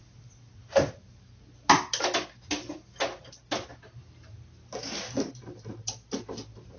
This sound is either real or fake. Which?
real